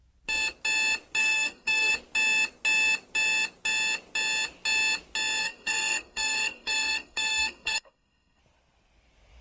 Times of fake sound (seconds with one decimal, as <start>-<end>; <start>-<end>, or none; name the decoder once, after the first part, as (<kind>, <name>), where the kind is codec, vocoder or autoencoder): 1.2-1.9 (codec, SNAC); 5.4-8.4